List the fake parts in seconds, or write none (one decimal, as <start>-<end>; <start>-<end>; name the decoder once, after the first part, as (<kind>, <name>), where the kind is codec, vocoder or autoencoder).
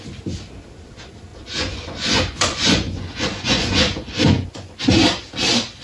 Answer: 1.3-4.8 (vocoder, Vocos)